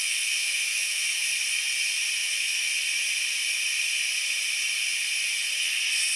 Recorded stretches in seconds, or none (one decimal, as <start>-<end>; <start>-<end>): 1.3-2.2; 2.7-6.2